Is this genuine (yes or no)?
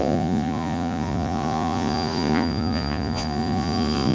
no